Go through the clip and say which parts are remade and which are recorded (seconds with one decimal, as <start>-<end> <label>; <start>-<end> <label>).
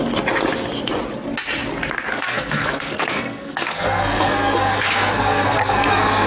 0.0-2.1 recorded; 2.1-6.3 remade